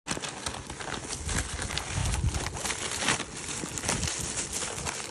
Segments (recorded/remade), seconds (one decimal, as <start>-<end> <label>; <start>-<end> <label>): 0.0-5.1 recorded